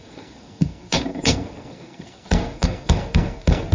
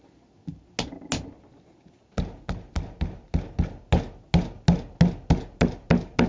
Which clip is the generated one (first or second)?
first